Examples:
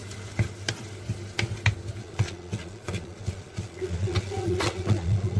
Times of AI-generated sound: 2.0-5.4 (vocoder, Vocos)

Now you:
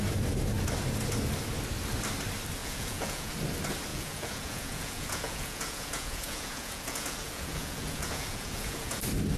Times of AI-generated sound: 2.6-3.3 (vocoder, Vocos); 3.9-9.0